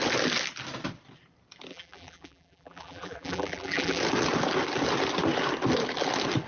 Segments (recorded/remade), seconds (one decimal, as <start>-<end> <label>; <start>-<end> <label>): 0.0-1.7 recorded; 1.7-4.0 remade; 4.0-6.5 recorded